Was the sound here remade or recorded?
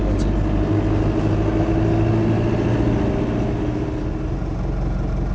recorded